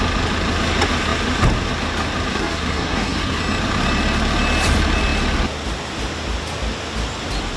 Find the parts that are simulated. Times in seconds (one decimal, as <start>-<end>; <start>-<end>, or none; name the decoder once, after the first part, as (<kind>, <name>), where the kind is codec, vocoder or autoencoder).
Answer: 2.3-3.4 (codec, SNAC)